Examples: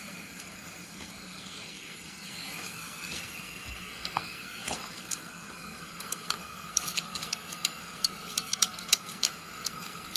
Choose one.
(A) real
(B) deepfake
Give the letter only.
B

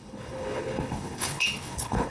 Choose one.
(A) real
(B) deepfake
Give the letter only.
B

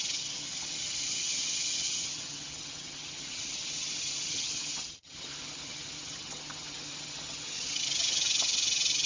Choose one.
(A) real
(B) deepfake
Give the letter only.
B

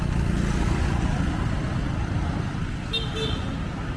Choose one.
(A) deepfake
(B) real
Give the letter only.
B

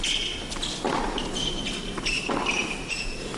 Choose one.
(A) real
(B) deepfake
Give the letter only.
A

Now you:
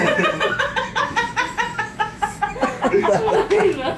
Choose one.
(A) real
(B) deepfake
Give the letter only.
B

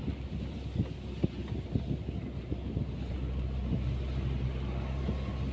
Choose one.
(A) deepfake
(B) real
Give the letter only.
B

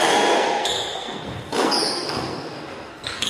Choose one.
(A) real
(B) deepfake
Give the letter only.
B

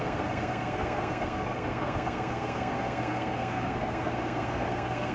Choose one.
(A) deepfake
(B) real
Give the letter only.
A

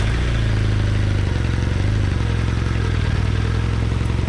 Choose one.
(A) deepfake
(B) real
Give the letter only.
B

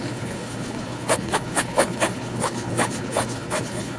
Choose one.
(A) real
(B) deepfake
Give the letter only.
B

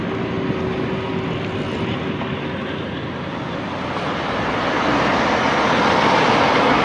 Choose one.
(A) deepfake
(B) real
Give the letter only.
B